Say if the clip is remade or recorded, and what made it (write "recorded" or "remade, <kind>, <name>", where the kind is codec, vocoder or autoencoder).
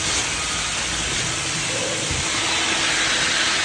recorded